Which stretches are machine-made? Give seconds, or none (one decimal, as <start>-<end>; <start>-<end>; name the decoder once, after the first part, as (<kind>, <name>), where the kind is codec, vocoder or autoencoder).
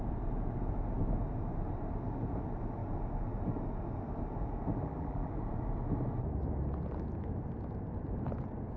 4.8-5.3 (vocoder, BigVGAN v2)